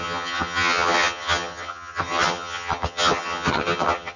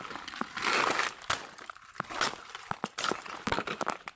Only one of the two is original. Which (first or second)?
second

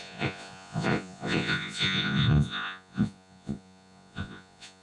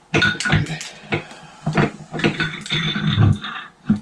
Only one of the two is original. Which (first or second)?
second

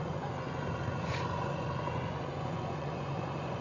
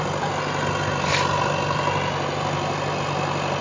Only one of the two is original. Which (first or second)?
second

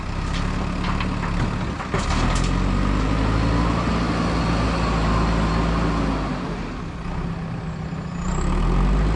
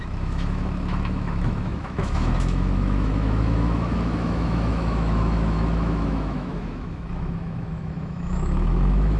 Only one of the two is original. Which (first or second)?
first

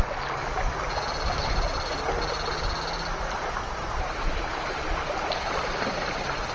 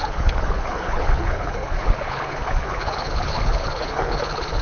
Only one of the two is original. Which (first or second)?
first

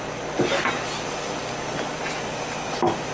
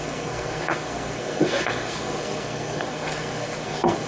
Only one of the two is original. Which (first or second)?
first